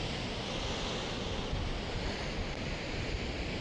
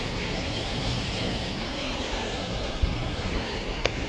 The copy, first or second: second